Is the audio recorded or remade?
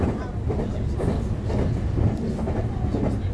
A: recorded